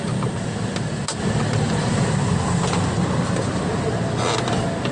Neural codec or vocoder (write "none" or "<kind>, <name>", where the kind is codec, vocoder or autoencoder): none